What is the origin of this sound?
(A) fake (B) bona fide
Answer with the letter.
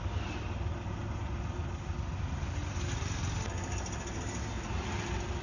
B